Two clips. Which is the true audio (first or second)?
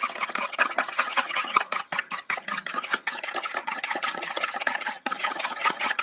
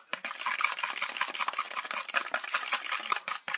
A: second